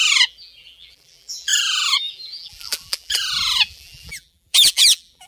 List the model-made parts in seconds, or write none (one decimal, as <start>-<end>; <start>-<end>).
0.0-5.3